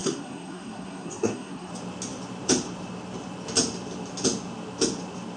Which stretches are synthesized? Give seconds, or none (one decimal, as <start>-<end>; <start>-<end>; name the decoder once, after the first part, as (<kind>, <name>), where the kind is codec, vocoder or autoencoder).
0.0-1.7 (codec, SNAC)